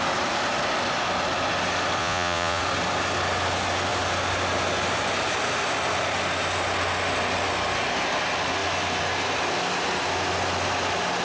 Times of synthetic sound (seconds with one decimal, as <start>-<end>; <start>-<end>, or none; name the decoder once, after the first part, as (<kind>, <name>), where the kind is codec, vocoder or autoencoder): 2.0-2.6 (vocoder, Vocos)